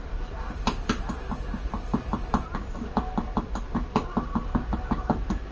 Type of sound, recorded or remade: remade